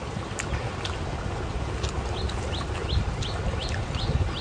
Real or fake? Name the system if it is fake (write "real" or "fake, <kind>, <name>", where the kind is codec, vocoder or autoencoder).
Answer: real